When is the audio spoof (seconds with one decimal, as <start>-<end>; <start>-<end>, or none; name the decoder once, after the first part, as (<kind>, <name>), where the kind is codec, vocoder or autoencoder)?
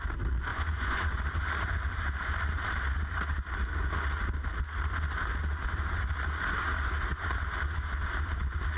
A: 0.5-1.2 (vocoder, Vocos)